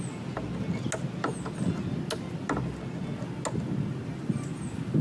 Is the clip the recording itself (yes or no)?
yes